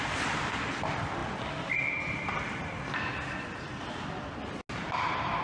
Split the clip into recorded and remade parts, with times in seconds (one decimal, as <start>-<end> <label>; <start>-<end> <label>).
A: 0.0-5.4 recorded